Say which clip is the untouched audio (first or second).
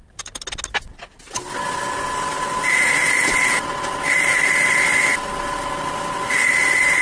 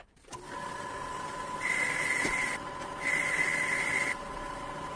first